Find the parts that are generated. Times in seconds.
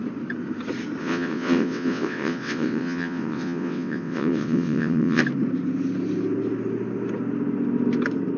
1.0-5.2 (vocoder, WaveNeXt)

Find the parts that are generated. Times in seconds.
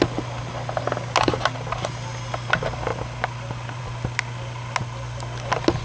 none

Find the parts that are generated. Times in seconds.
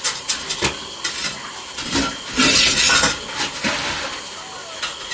none